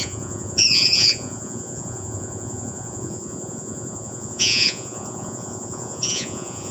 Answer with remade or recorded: remade